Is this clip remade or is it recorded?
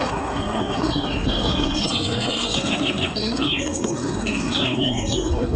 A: remade